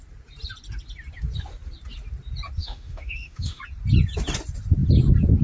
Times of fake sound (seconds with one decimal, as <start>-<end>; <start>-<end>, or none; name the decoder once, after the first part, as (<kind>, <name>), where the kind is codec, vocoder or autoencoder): 2.6-3.6 (autoencoder, DAC-VAE)